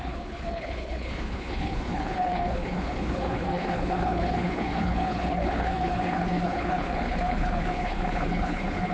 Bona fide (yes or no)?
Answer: no